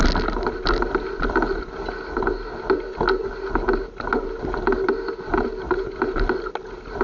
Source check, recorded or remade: recorded